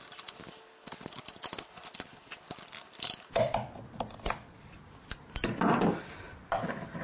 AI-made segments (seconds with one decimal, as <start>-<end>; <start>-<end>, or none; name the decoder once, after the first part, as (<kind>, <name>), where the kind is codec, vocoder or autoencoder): none

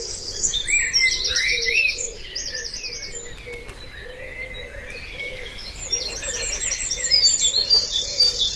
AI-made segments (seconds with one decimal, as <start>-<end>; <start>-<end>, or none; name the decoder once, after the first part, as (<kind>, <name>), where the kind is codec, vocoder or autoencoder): 0.0-0.6 (codec, DAC); 1.3-2.0; 5.2-5.8

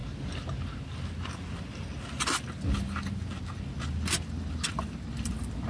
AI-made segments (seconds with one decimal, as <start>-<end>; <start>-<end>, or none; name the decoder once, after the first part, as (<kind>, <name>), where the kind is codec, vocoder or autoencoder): 4.7-5.7 (vocoder, BigVGAN v2)

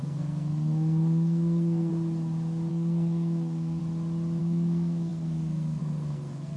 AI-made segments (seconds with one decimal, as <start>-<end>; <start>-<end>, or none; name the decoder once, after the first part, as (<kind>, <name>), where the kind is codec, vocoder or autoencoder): 0.0-1.9 (codec, SNAC); 2.7-3.8; 4.4-6.6

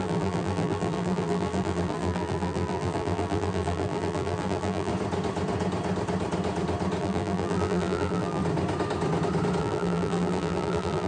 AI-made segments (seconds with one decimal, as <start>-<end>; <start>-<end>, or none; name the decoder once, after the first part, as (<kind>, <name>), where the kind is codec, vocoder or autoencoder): 0.0-4.9 (vocoder, BigVGAN v2); 7.0-8.4; 9.6-11.1

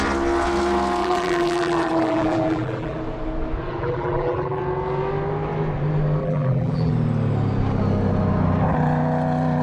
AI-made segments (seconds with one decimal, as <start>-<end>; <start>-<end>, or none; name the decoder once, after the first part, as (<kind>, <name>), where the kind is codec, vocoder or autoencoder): 1.0-3.0 (vocoder, BigVGAN v2); 3.8-4.6; 6.2-6.9